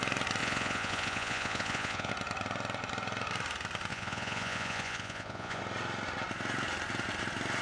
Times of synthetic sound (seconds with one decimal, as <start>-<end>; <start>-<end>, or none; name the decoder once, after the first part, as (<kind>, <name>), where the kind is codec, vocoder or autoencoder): 0.4-2.1 (vocoder, Vocos); 3.9-5.6